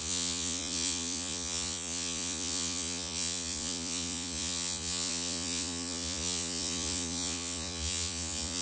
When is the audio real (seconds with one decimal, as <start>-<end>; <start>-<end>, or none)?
none